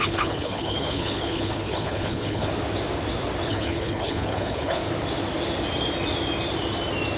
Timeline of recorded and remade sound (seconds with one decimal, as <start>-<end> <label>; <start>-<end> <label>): 0.0-2.5 remade; 2.5-3.5 recorded; 3.5-4.8 remade; 4.8-7.2 recorded